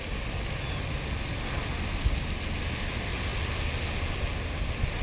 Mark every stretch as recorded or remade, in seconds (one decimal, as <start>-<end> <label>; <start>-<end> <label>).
0.0-5.0 recorded